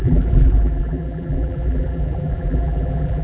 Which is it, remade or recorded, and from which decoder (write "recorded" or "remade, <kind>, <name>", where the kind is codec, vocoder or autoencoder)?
remade, vocoder, BigVGAN v2